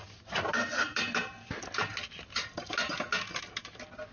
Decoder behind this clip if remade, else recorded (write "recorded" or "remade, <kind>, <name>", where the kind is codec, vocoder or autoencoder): recorded